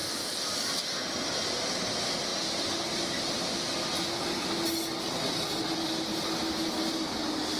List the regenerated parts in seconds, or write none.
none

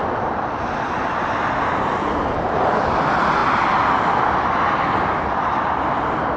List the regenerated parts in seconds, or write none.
none